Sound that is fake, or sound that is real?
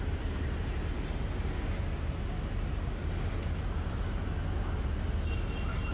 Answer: real